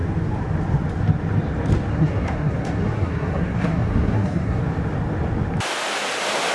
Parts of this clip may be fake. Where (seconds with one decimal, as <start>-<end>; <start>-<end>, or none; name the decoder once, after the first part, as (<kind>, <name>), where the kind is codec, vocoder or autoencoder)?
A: 1.9-4.6 (codec, SNAC)